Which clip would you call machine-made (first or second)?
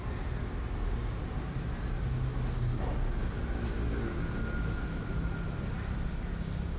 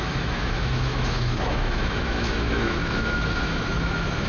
second